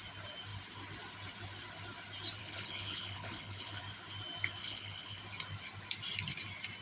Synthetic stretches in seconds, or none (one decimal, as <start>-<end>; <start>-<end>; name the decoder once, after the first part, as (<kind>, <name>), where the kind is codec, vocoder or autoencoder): 2.4-3.8 (codec, HILCodec); 4.6-5.2